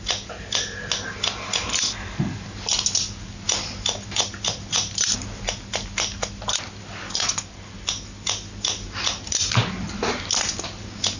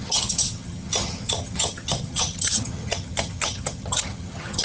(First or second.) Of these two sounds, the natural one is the first